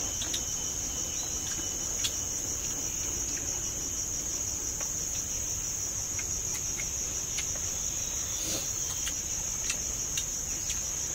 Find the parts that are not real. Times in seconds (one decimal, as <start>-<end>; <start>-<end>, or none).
7.8-8.5